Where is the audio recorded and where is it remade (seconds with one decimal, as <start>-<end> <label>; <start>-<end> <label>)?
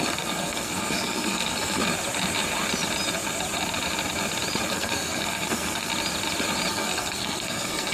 0.0-1.8 remade; 1.8-4.7 recorded; 4.7-5.9 remade; 5.9-6.7 recorded; 6.7-7.9 remade